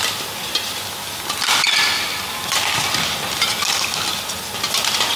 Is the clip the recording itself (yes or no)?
yes